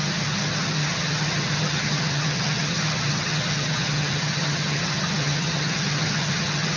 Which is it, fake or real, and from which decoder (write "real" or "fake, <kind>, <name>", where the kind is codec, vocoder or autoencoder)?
fake, vocoder, HiFi-GAN